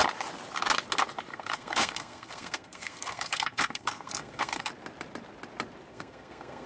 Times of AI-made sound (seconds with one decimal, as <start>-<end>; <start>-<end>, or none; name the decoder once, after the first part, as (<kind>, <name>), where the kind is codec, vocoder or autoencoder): 1.3-4.7 (codec, SNAC); 5.9-6.7